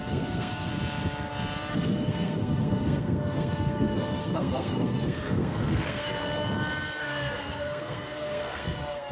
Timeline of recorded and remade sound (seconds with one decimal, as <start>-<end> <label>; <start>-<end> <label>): 0.0-0.7 remade; 0.7-1.7 recorded; 1.7-6.2 remade; 6.2-7.0 recorded; 7.0-9.1 remade